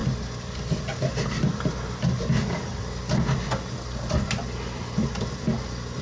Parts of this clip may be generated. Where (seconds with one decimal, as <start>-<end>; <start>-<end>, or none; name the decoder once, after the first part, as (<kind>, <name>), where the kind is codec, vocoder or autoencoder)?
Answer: none